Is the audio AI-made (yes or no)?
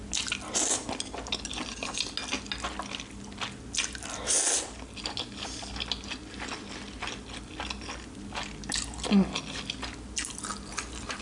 no